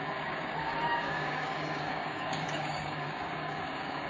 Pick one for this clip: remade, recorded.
remade